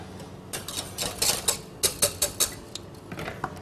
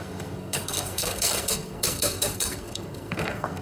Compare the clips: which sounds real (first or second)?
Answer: first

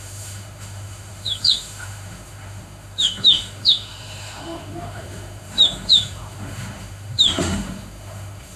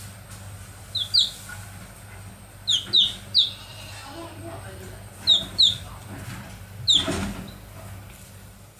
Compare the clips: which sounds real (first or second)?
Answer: second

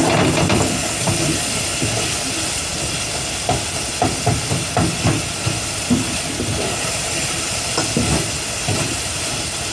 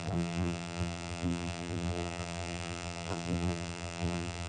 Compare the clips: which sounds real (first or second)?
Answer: first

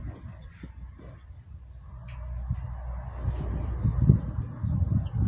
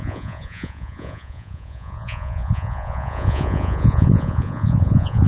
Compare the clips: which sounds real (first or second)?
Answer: first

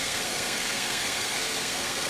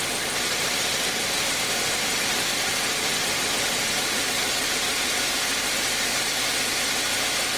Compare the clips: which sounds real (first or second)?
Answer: second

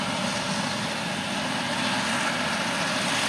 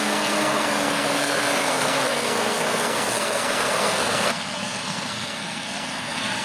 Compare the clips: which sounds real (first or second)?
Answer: first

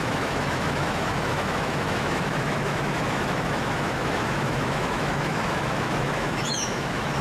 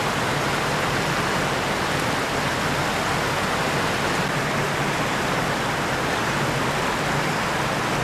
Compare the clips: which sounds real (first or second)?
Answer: second